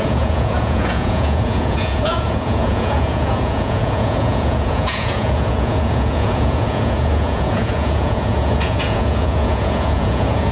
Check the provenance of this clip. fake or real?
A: fake